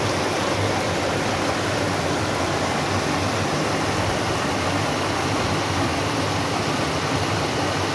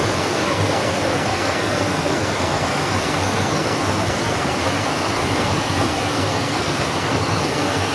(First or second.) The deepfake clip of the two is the second